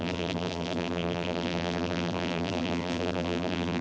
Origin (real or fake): fake